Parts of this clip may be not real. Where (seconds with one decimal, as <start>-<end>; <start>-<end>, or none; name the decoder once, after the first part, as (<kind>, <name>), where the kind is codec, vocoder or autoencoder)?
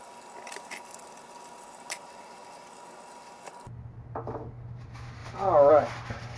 none